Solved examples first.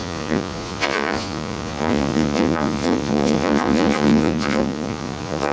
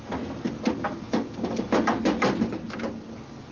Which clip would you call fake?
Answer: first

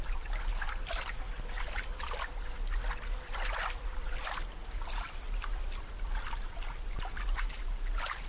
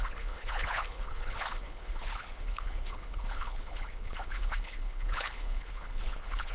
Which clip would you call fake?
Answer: second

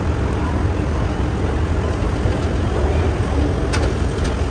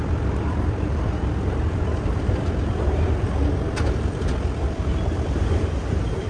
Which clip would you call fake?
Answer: second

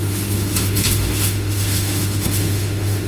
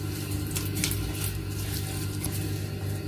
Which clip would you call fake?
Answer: first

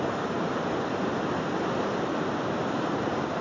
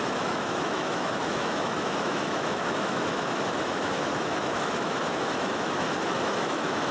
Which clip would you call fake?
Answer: second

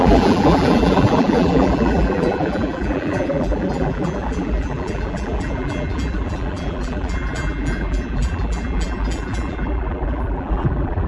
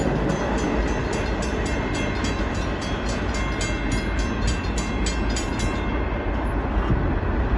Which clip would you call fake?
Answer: first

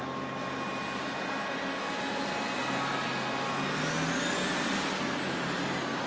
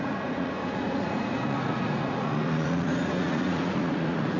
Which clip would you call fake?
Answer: second